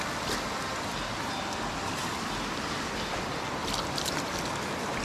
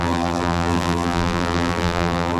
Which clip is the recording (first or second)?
first